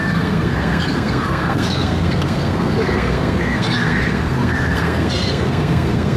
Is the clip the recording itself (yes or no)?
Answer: no